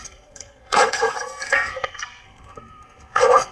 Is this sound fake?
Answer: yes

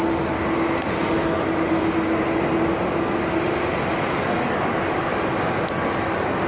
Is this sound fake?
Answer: no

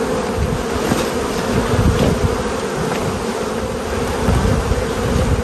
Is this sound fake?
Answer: no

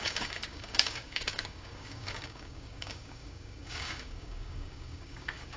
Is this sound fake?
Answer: yes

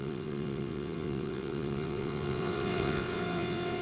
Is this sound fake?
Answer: yes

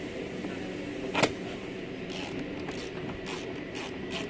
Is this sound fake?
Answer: no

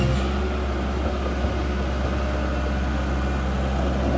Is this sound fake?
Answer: no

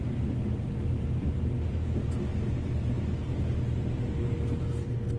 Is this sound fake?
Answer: no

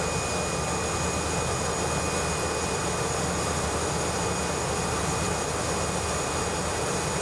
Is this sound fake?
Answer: no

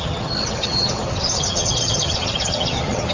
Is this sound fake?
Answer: yes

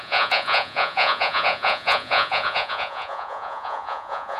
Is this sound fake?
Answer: yes